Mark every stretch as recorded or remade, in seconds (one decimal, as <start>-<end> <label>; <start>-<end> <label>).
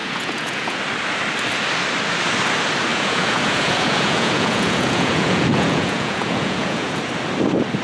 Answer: 0.0-0.8 remade; 0.8-2.9 recorded; 2.9-7.0 remade; 7.0-7.8 recorded